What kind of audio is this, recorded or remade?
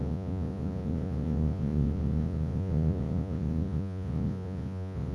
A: remade